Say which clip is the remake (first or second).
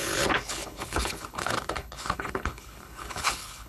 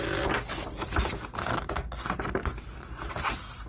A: first